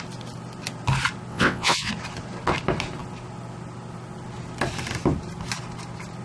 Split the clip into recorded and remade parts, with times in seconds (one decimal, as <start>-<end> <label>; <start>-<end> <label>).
0.0-1.3 recorded; 1.3-1.9 remade; 1.9-6.2 recorded